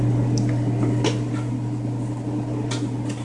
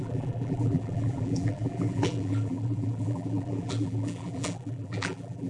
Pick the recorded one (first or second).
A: first